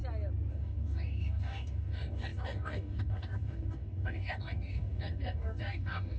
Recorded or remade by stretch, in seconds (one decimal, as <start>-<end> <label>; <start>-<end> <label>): 0.0-0.5 recorded; 0.5-6.2 remade